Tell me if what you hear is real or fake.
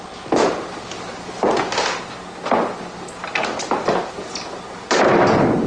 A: real